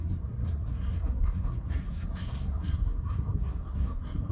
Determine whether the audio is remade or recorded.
remade